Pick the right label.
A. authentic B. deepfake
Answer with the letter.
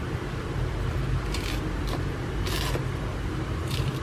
B